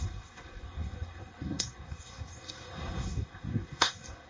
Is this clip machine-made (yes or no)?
yes